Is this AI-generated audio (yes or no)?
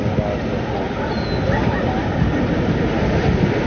no